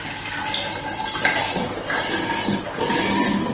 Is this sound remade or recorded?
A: recorded